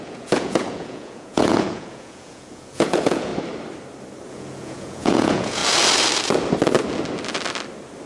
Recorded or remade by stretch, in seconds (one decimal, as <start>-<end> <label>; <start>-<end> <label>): 0.0-3.3 remade; 3.3-4.3 recorded; 4.3-5.6 remade; 5.6-8.1 recorded